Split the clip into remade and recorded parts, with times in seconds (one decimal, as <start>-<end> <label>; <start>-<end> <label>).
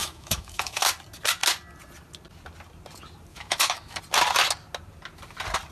0.0-0.8 remade; 0.8-3.3 recorded; 3.3-4.0 remade; 4.0-5.7 recorded